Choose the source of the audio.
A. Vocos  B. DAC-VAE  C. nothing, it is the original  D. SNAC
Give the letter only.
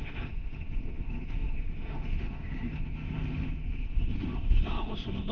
B